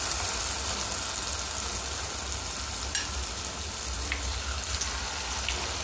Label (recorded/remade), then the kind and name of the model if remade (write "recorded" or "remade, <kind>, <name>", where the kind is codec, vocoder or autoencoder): recorded